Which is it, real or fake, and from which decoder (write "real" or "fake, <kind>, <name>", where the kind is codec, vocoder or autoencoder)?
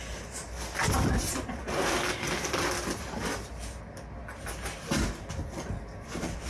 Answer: real